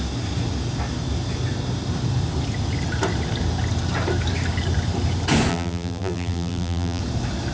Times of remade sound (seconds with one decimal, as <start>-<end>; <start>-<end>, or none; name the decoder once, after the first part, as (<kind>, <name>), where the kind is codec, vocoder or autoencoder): 5.5-7.0 (vocoder, BigVGAN v2)

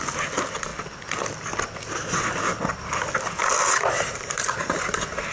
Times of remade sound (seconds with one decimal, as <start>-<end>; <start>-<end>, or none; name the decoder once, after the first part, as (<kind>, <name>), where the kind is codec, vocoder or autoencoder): 0.0-0.7 (vocoder, BigVGAN v2); 3.9-5.3

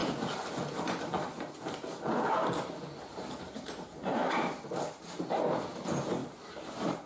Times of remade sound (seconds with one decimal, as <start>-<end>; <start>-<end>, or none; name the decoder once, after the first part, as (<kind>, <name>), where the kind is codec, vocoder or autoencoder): 3.1-4.2 (vocoder, BigVGAN v2); 4.9-7.1

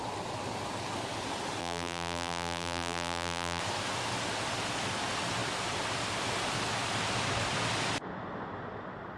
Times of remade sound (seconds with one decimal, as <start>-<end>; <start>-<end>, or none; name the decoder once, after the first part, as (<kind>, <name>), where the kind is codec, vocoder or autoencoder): 1.6-3.6 (vocoder, BigVGAN v2)

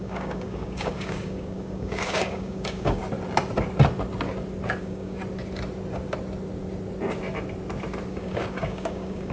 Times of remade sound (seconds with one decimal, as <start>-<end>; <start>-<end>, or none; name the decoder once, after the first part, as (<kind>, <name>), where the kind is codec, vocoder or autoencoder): 0.0-3.0 (codec, DAC); 4.8-5.2; 8.1-9.3

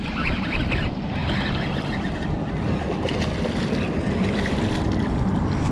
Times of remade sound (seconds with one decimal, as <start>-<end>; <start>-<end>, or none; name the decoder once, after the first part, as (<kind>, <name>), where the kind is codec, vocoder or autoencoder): none

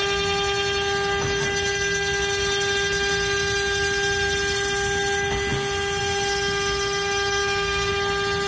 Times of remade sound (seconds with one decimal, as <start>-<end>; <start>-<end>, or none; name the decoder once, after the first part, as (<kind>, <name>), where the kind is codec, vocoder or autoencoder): 7.4-7.9 (codec, DAC)